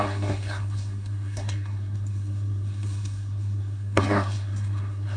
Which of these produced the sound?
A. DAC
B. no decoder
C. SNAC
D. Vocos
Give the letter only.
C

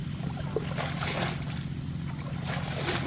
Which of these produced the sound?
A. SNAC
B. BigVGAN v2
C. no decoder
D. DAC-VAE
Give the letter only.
C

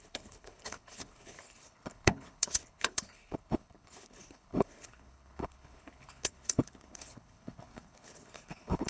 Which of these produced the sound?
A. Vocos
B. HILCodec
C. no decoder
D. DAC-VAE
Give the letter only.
B